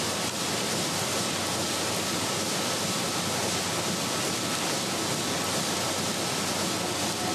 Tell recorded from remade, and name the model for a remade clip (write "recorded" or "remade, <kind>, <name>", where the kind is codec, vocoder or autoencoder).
recorded